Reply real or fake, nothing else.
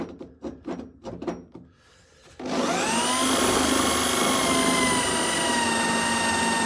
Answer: real